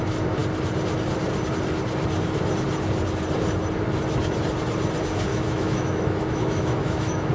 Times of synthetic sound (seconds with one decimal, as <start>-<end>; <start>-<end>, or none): 5.3-7.3

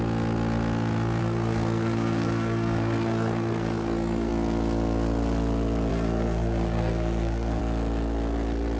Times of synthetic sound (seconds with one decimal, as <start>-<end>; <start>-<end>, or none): 1.2-4.3; 5.9-7.6

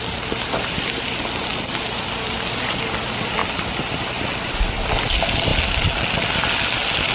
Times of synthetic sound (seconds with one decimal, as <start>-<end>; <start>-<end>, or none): none

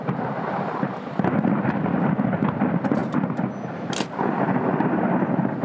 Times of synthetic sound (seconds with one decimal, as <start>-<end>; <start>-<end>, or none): none

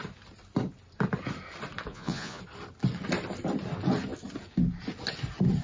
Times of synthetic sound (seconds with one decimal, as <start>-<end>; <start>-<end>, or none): 1.9-2.4